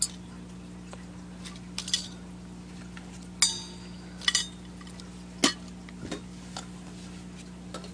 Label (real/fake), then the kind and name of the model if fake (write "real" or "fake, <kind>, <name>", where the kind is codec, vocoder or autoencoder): real